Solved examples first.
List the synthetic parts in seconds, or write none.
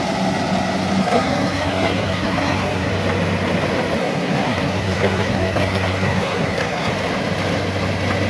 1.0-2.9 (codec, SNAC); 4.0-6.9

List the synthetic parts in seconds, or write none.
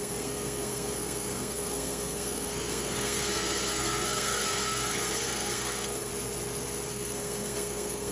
0.0-6.1 (codec, SNAC); 6.9-8.1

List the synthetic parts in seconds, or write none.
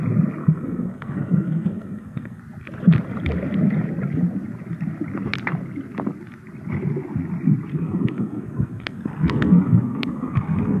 0.4-2.4 (codec, SNAC); 7.7-10.8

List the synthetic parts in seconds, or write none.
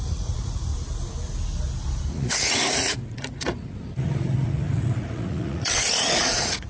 0.0-0.7 (vocoder, Vocos); 2.1-6.7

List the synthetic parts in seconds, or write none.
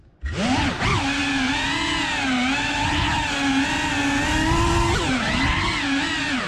none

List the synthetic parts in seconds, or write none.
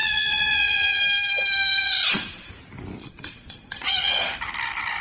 0.0-1.0 (vocoder, Vocos); 1.8-2.5; 3.0-4.3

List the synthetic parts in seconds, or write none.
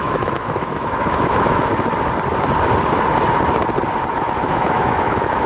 0.0-1.7 (autoencoder, DAC-VAE); 4.1-5.5